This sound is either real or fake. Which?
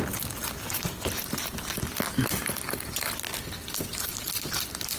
real